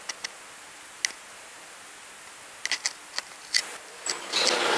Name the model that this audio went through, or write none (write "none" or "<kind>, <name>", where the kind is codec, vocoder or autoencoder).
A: none